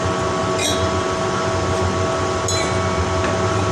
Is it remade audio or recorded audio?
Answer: recorded